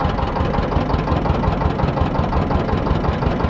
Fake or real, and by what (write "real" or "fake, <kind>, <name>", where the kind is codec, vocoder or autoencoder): real